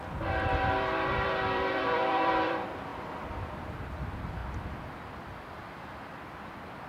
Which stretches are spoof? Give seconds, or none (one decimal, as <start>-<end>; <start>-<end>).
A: 0.0-4.4; 5.7-6.9